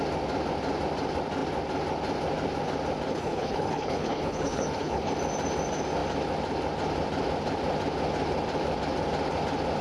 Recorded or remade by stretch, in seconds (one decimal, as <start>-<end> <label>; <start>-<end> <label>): 0.0-3.1 recorded; 3.1-5.1 remade; 5.1-9.8 recorded